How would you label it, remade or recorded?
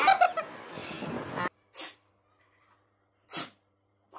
recorded